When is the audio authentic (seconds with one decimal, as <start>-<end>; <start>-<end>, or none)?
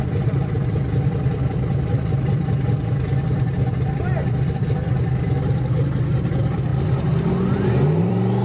6.7-8.0